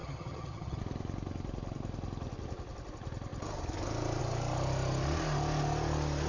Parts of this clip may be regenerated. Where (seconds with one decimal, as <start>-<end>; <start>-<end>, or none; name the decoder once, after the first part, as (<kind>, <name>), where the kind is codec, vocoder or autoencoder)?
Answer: 0.0-0.8 (vocoder, HiFi-GAN)